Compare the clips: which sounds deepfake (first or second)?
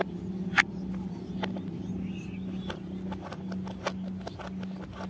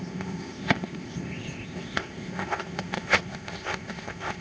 second